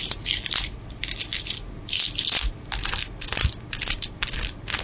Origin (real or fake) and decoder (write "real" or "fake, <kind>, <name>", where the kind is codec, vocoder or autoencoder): real